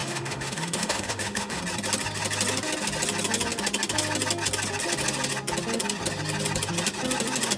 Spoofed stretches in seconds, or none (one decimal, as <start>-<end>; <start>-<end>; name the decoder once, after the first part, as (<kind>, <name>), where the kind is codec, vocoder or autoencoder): 0.0-1.6 (autoencoder, DAC-VAE)